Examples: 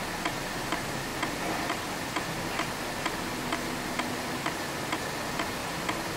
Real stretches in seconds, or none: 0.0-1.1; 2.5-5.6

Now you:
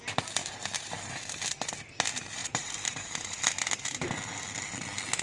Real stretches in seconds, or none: 0.0-0.4; 1.1-2.4; 4.2-5.2

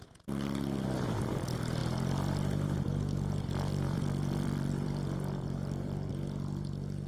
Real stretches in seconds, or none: 0.0-1.8; 6.1-7.1

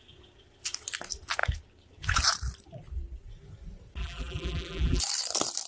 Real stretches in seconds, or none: 0.0-4.0; 5.0-5.7

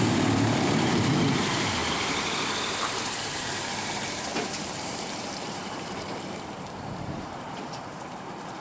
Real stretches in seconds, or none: 1.8-3.2